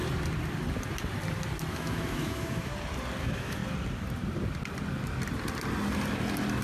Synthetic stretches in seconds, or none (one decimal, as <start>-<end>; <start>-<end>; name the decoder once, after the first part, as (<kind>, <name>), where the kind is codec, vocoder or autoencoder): 1.7-2.7 (autoencoder, DAC-VAE); 3.2-3.6